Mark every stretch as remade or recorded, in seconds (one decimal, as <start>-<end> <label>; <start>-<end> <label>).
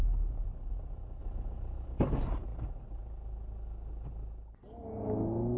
0.0-5.6 recorded